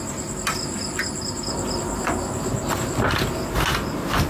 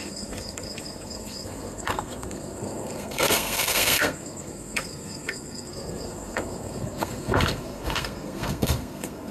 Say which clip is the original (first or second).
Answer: first